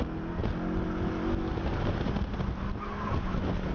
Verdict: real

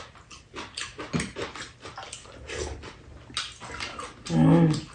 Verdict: real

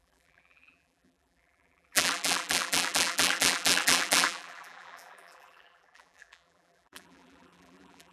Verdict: fake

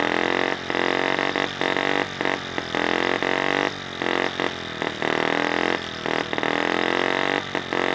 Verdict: real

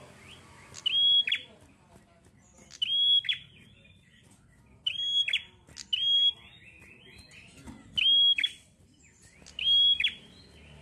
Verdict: real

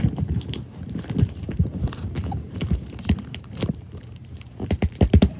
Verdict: fake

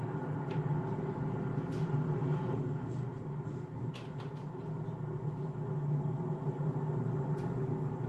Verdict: real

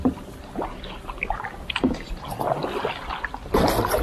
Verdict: real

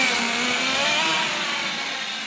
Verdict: real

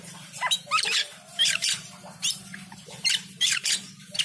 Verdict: fake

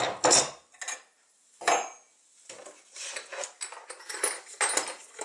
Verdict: real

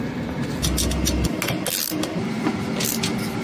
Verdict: real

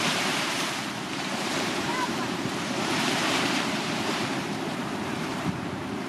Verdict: fake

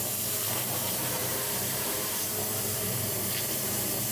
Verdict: fake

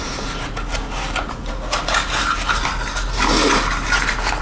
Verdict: real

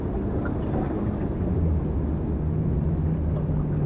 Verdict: real